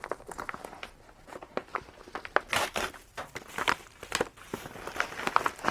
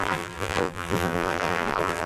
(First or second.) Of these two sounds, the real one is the first